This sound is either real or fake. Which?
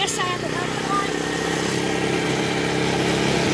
real